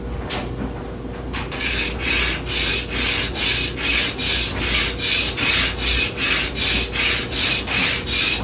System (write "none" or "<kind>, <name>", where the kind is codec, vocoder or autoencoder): none